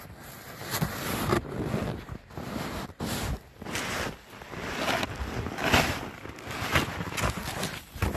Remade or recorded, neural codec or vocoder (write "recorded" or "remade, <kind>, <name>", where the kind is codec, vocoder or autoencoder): recorded